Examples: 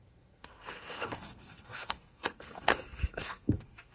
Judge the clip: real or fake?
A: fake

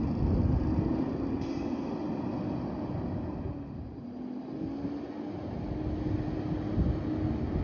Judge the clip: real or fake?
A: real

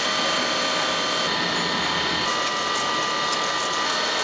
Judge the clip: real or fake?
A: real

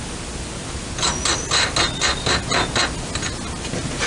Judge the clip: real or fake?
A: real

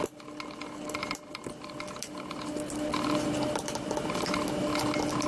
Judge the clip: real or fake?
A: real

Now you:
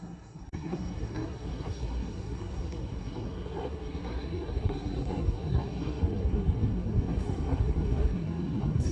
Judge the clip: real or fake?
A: fake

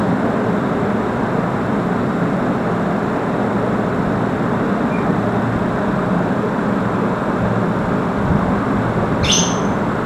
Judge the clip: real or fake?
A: real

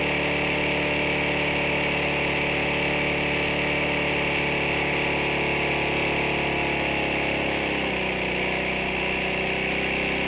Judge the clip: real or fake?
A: real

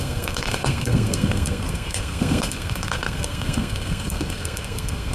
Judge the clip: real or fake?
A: fake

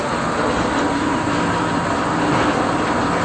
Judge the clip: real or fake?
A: real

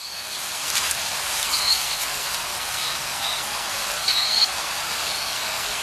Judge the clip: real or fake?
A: fake